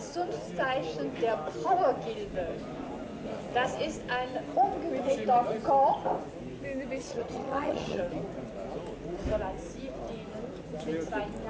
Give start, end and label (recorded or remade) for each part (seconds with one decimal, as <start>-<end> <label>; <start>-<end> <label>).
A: 0.0-7.1 recorded; 7.1-8.0 remade; 8.0-11.5 recorded